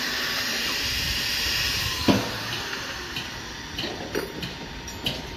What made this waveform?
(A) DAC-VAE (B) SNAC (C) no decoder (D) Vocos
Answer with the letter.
C